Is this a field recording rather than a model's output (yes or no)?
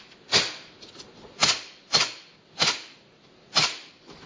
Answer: yes